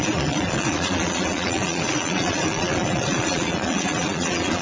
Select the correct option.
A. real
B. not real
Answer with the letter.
B